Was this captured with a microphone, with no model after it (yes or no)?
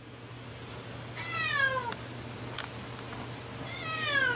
yes